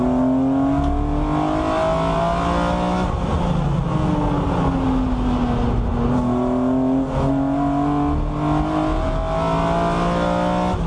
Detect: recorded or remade recorded